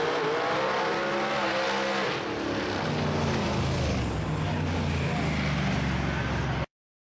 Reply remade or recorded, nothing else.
recorded